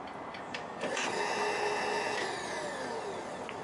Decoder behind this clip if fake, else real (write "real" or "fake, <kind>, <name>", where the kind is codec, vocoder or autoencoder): real